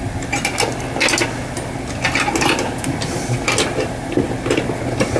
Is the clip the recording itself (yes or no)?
yes